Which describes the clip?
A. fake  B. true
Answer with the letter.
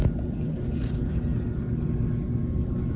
B